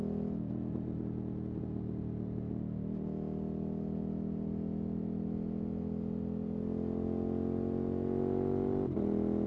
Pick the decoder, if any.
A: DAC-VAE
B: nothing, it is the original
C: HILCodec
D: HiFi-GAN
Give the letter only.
B